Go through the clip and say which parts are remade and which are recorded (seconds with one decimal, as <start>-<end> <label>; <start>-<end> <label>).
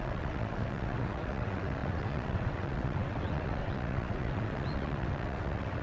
0.0-5.8 remade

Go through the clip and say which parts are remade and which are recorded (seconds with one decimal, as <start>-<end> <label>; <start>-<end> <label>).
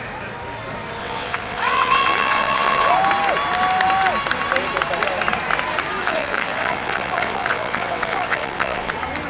0.0-1.0 recorded; 1.0-2.9 remade; 2.9-6.0 recorded; 6.0-8.9 remade; 8.9-9.3 recorded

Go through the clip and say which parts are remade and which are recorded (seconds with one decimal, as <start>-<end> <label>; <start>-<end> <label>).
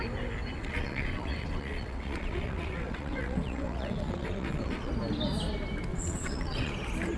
0.0-0.6 recorded; 0.6-4.9 remade; 4.9-5.9 recorded; 5.9-6.7 remade; 6.7-7.2 recorded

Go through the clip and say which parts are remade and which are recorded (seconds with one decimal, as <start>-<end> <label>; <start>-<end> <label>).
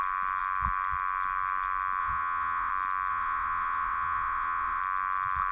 0.0-2.0 recorded; 2.0-2.7 remade; 2.7-3.1 recorded; 3.1-4.8 remade; 4.8-5.5 recorded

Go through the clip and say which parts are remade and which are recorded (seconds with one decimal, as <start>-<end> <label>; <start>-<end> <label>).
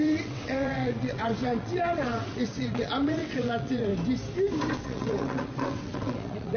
0.0-3.9 remade; 3.9-4.7 recorded; 4.7-6.6 remade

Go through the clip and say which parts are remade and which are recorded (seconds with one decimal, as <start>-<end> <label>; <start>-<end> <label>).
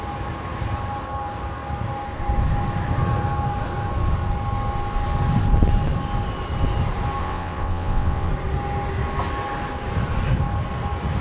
0.0-7.2 recorded; 7.2-8.3 remade; 8.3-11.2 recorded